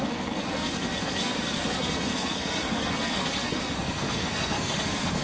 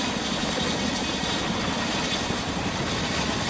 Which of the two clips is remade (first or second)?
first